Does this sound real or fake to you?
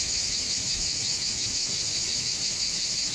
fake